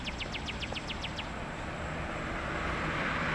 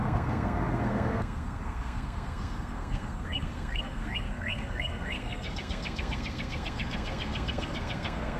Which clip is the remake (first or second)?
second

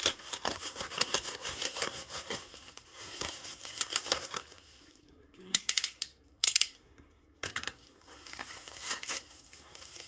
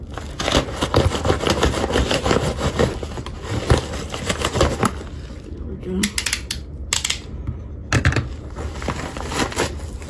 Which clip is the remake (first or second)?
first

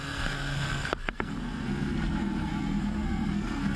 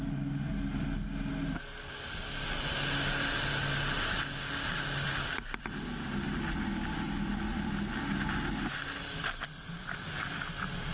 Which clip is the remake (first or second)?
first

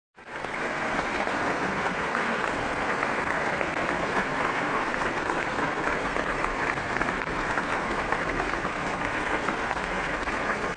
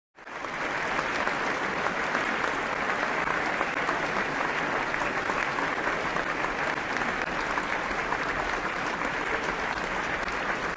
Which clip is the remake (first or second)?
first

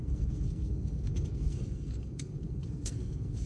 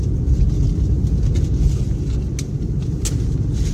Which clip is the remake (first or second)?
first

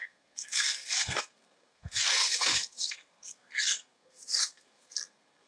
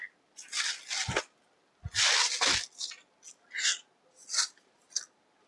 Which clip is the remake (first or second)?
first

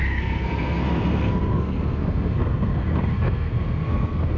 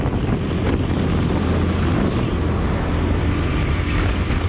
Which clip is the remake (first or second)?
first